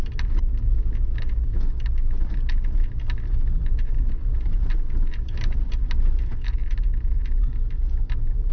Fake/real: real